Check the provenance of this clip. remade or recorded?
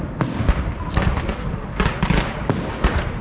recorded